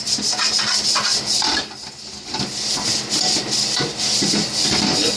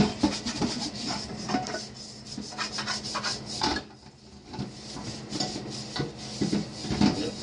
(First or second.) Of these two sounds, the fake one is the first